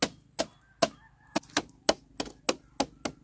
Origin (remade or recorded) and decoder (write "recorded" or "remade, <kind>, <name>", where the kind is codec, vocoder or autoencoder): recorded